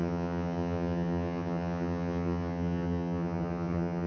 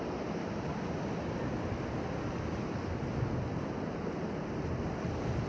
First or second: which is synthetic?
first